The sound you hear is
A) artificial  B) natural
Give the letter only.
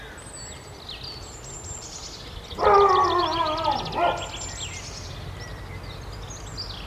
B